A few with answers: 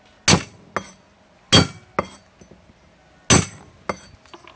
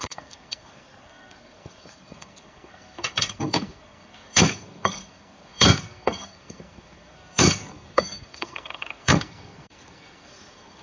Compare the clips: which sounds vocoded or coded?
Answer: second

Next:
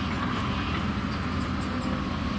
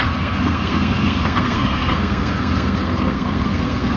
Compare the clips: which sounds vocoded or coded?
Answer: second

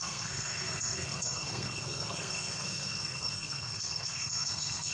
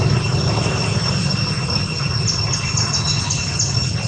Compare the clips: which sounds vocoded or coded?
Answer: first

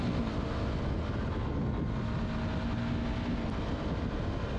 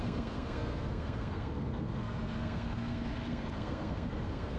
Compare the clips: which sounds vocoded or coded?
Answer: second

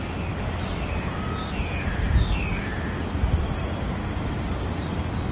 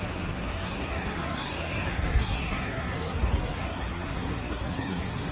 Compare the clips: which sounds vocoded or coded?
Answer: second